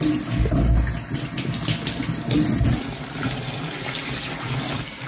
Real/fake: real